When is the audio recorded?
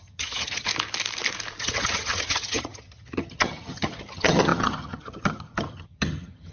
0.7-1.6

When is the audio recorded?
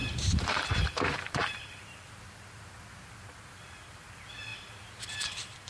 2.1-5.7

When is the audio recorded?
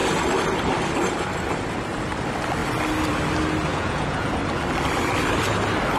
0.0-3.7; 4.3-6.0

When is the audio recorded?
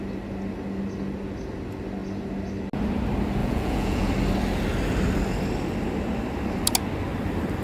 0.0-3.4; 4.1-7.6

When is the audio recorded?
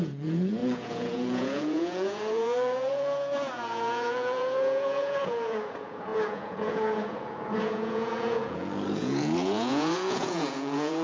none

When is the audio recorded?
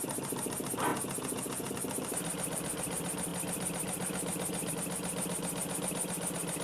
0.0-0.9; 1.7-6.6